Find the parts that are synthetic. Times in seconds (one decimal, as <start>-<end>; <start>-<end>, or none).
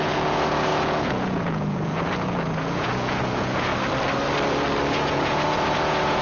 0.0-3.7; 4.9-6.2